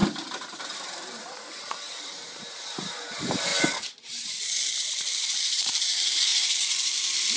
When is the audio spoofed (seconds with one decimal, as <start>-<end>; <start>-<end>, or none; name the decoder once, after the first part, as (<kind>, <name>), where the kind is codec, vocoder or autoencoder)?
0.6-3.5 (vocoder, BigVGAN v2); 5.5-7.4

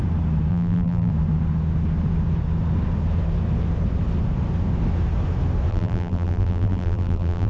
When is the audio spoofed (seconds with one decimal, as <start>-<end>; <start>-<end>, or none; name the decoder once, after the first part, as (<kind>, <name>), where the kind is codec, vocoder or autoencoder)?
0.5-1.1 (vocoder, BigVGAN v2); 5.7-7.5

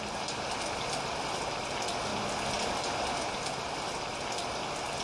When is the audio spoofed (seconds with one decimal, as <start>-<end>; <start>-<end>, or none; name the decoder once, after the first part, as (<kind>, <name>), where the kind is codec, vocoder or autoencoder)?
none

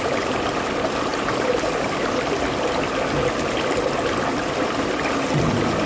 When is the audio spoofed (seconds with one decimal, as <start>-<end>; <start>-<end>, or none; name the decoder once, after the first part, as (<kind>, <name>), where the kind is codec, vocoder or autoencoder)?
1.1-3.3 (vocoder, BigVGAN v2)

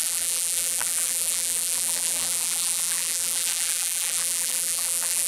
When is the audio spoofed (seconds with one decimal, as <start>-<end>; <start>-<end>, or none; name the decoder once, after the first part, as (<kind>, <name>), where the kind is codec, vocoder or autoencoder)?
0.0-5.3 (vocoder, BigVGAN v2)

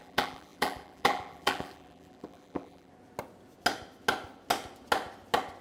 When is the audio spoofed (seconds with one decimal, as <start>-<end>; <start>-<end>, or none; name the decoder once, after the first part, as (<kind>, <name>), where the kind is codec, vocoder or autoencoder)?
0.0-2.9 (vocoder, BigVGAN v2)